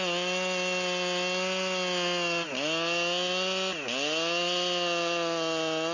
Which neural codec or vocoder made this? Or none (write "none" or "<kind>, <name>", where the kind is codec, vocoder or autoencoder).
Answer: none